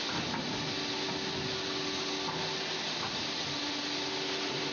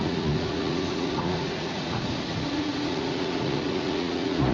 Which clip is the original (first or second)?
first